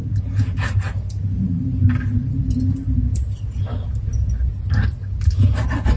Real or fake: real